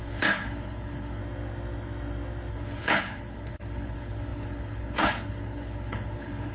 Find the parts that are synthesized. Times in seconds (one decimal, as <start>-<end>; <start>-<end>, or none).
0.0-1.2; 2.5-6.5